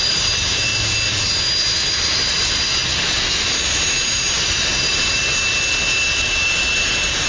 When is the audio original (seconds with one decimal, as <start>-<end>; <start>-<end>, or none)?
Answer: 0.7-4.7; 5.3-6.2